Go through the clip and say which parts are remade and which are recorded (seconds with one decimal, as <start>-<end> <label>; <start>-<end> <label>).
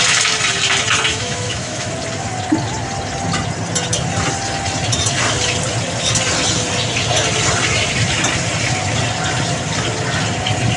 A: 0.0-1.1 recorded; 1.1-1.9 remade; 1.9-10.8 recorded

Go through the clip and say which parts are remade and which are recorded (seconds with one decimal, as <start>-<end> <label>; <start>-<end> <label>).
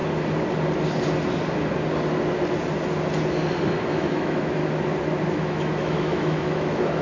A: 0.0-3.9 recorded; 3.9-4.6 remade; 4.6-5.3 recorded; 5.3-7.0 remade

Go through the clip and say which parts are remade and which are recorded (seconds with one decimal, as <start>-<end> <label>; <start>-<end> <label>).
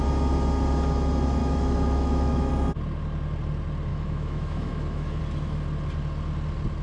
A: 0.0-1.4 recorded; 1.4-2.5 remade; 2.5-3.9 recorded; 3.9-5.2 remade; 5.2-6.8 recorded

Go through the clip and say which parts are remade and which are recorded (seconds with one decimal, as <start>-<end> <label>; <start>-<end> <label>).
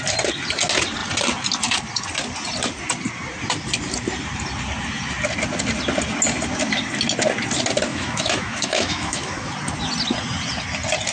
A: 0.0-7.9 recorded; 7.9-9.5 remade; 9.5-11.1 recorded